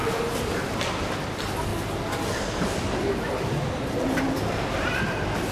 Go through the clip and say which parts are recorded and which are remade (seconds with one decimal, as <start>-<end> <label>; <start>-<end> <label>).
0.0-0.8 remade; 0.8-1.7 recorded; 1.7-5.0 remade; 5.0-5.5 recorded